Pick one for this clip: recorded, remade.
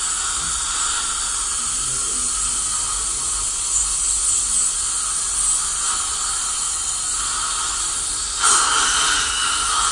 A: recorded